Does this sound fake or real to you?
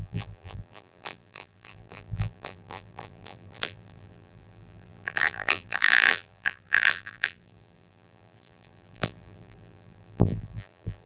fake